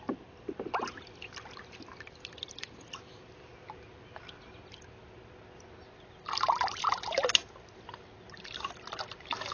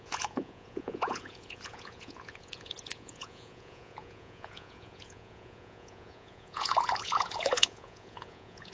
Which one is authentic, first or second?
first